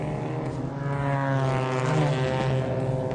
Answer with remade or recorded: recorded